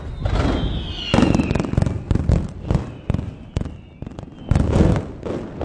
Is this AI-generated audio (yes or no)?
no